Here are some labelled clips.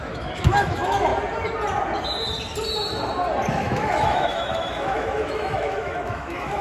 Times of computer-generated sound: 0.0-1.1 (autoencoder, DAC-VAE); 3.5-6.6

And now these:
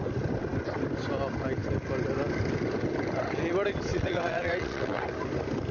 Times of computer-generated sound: 3.9-5.0 (vocoder, WaveNeXt)